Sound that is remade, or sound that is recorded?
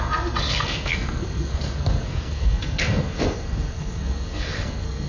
remade